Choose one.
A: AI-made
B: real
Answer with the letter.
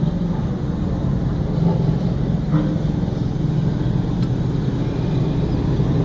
B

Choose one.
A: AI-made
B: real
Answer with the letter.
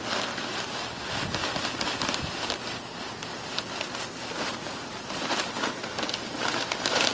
B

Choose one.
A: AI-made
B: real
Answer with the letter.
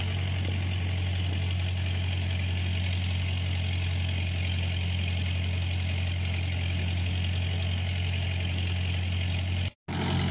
B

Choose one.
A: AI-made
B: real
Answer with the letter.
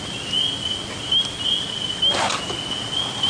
B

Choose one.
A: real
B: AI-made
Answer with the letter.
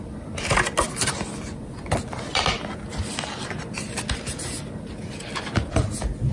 A